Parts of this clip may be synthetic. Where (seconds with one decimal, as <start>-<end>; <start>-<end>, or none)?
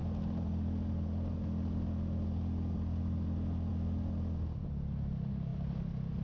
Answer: none